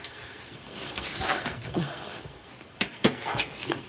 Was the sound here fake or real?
fake